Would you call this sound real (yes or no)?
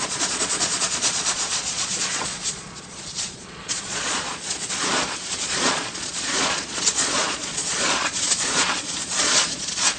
no